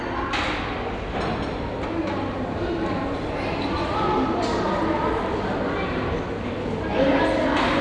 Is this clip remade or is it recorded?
recorded